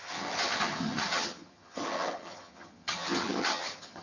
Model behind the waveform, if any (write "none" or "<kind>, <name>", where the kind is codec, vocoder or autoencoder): vocoder, HiFi-GAN